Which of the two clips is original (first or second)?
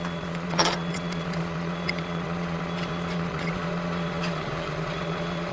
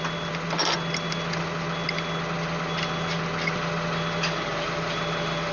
second